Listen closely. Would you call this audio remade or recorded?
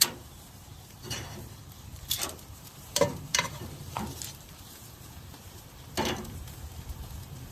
remade